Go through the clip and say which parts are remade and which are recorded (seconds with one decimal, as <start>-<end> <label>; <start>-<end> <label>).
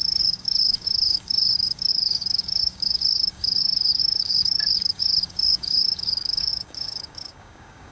0.0-7.9 remade